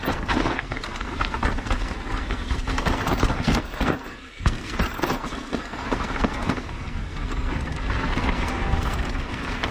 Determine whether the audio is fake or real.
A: fake